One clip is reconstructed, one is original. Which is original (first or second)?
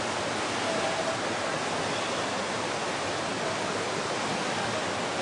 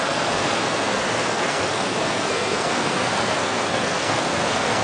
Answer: first